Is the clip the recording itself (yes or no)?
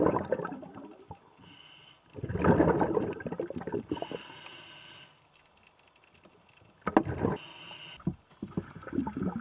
yes